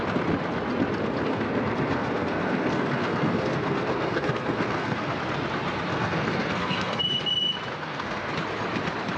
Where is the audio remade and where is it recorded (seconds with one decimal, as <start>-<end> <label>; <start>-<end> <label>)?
0.0-1.3 recorded; 1.3-5.2 remade; 5.2-5.9 recorded; 5.9-7.0 remade; 7.0-7.7 recorded; 7.7-8.3 remade; 8.3-9.2 recorded